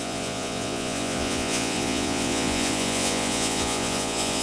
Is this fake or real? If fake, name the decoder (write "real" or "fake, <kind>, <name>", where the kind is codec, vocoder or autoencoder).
fake, vocoder, Vocos